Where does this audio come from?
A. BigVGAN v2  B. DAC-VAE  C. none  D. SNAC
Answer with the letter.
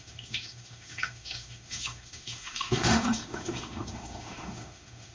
B